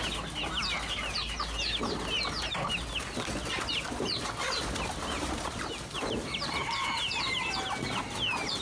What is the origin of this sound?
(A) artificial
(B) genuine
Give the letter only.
B